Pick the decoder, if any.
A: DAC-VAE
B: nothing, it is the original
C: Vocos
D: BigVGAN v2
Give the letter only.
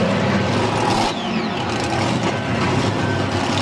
D